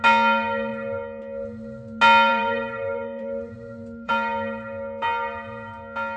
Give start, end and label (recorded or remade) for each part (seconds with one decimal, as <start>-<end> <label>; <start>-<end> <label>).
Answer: 0.0-2.3 recorded; 2.3-4.1 remade; 4.1-6.2 recorded